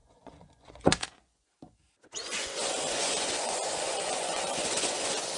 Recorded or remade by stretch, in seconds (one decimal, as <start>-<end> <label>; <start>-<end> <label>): 0.0-1.5 remade; 1.5-2.2 recorded; 2.2-5.4 remade

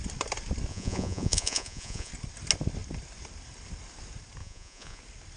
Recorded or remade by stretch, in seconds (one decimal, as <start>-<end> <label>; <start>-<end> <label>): 0.0-0.7 recorded; 0.7-2.1 remade; 2.1-4.4 recorded; 4.4-5.0 remade; 5.0-5.4 recorded

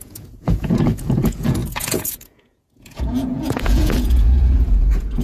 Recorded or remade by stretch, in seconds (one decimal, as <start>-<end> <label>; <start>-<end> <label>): 0.0-5.2 remade

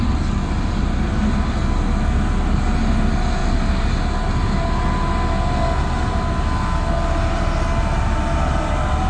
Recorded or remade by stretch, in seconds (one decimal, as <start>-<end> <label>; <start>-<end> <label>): 0.0-9.1 recorded

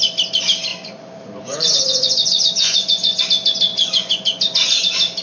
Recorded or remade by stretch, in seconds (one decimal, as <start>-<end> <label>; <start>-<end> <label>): 0.0-0.7 recorded; 0.7-3.2 remade; 3.2-3.7 recorded; 3.7-4.8 remade; 4.8-5.2 recorded